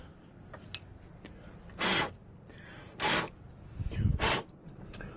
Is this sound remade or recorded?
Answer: recorded